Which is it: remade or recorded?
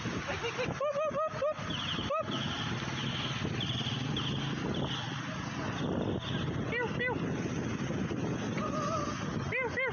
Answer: recorded